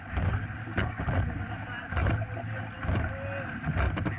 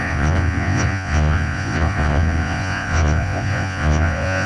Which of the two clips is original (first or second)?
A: first